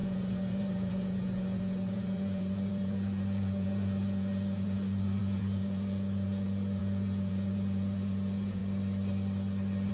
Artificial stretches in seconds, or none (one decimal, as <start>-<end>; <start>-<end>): 0.0-8.6